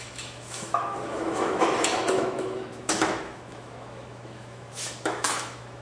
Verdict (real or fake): fake